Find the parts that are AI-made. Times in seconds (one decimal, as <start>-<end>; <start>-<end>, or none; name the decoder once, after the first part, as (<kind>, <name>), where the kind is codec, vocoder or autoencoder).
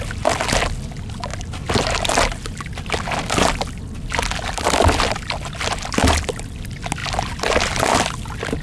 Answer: none